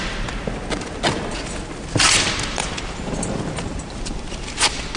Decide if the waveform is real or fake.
real